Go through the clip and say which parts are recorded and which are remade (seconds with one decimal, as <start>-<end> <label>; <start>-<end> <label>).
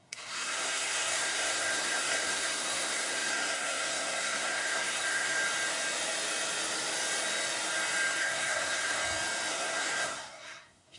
0.0-5.4 remade; 5.4-8.2 recorded; 8.2-9.0 remade; 9.0-9.5 recorded; 9.5-11.0 remade